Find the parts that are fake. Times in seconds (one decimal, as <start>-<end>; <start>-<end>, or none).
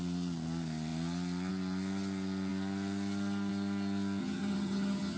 4.2-5.2